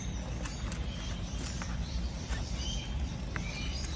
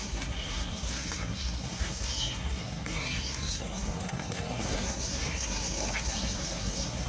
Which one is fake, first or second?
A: second